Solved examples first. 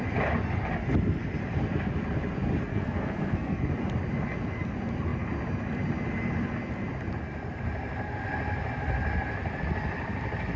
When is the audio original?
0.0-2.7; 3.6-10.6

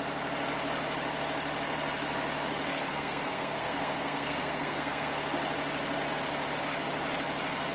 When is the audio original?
0.0-2.9; 5.1-7.7

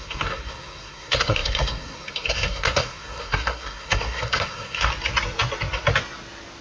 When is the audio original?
4.9-6.6

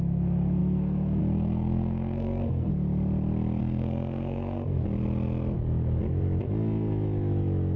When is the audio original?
2.7-3.6; 4.8-7.8

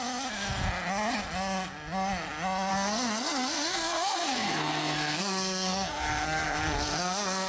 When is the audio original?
0.0-2.7

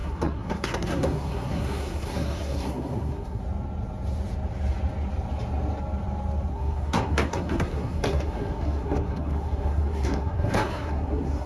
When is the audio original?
3.4-6.5

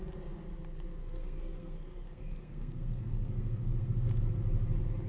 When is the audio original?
0.0-1.0; 4.1-5.1